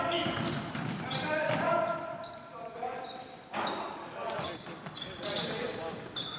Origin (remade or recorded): recorded